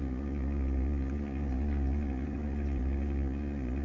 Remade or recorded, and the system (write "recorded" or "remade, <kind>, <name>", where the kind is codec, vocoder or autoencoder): remade, vocoder, Vocos